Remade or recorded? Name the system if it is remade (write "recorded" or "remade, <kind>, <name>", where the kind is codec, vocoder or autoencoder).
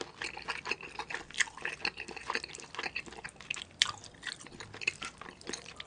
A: recorded